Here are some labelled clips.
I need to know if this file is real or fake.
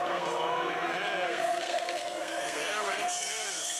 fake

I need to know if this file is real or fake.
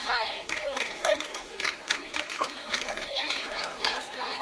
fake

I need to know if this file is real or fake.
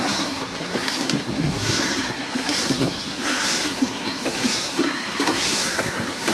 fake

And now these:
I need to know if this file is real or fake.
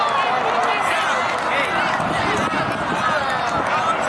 real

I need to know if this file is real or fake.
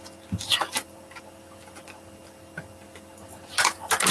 real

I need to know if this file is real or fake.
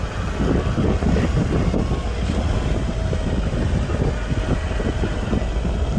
real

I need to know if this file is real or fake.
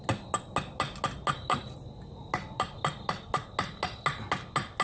real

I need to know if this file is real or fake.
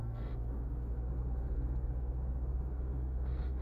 fake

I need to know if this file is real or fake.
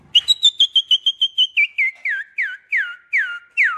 real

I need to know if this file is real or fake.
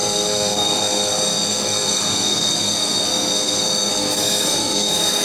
fake